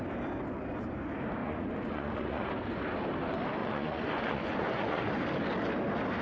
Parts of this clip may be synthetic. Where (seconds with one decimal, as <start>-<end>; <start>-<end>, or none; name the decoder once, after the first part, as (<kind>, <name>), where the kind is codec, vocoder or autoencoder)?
1.4-2.5 (vocoder, Vocos); 3.6-5.1